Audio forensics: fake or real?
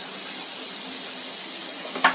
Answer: real